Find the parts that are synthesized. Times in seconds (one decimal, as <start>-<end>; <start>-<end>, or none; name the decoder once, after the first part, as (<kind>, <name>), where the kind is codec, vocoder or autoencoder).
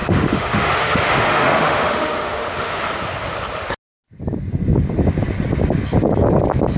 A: 0.0-2.8 (autoencoder, DAC-VAE)